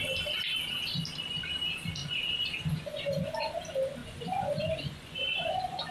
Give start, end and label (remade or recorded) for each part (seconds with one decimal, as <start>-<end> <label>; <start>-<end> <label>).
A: 0.0-2.0 recorded; 2.0-3.3 remade; 3.3-4.0 recorded; 4.0-5.9 remade